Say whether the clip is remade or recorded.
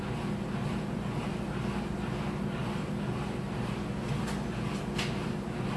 recorded